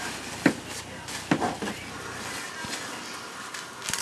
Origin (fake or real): real